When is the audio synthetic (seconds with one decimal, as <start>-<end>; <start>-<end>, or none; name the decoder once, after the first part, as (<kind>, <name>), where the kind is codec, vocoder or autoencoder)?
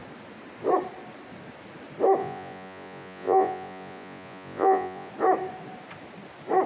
2.2-5.1 (vocoder, Vocos)